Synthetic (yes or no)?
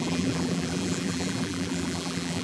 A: yes